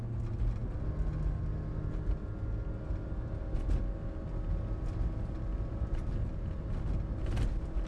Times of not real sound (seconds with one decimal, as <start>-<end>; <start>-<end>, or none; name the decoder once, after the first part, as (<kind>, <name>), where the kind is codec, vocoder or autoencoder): none